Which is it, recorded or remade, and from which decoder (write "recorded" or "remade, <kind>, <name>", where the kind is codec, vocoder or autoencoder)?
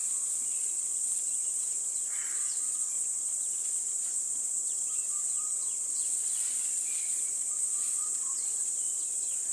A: remade, vocoder, Vocos